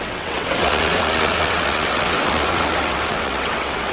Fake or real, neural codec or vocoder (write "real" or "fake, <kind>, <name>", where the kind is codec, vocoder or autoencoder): fake, vocoder, WaveNeXt